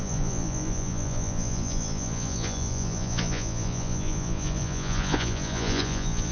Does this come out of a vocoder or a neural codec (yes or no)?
yes